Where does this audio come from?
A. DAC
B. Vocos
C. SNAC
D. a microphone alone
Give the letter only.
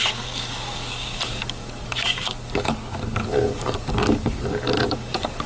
A